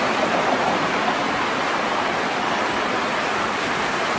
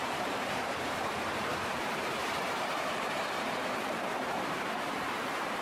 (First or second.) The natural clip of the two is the first